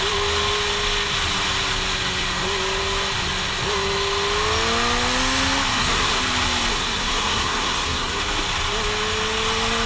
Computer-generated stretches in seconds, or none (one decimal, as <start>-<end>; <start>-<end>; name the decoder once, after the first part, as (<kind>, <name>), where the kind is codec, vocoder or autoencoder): 5.7-6.2 (codec, SNAC); 6.7-8.2